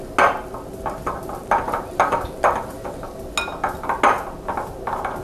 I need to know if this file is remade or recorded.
recorded